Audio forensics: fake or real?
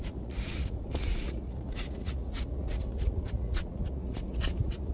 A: fake